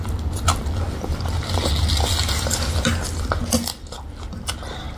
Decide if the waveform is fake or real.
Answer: real